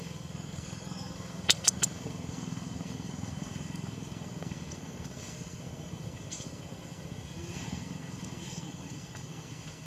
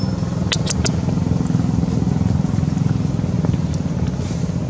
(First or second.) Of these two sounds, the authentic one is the second